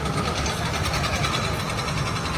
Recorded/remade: recorded